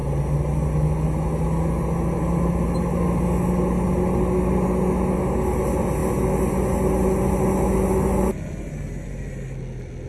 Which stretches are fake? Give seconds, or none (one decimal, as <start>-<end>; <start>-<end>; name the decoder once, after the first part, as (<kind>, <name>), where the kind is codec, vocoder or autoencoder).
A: none